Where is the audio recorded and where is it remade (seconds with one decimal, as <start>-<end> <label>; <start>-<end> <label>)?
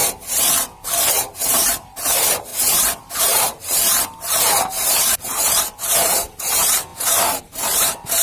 0.0-1.4 recorded; 1.4-8.2 remade